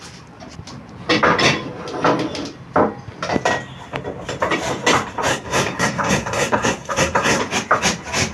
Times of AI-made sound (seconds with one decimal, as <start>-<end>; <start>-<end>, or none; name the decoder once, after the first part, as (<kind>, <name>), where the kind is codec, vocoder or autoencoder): 5.3-7.4 (codec, SNAC)